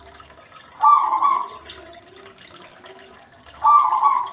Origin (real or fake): real